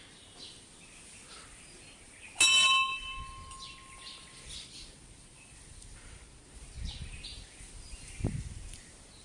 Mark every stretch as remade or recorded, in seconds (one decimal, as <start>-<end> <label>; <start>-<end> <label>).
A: 0.0-9.2 recorded